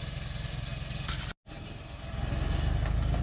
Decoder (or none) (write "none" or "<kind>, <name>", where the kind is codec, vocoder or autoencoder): none